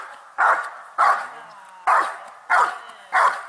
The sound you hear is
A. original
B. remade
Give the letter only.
A